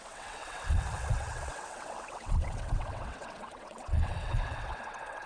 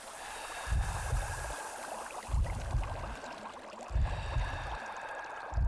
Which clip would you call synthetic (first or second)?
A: first